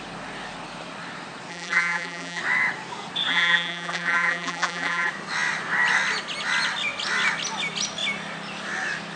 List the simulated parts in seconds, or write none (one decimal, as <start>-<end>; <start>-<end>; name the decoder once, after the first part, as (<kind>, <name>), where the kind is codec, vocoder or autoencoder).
1.5-2.4 (vocoder, BigVGAN v2); 3.3-5.1